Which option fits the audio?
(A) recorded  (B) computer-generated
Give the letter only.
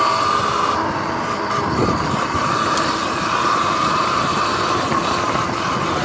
A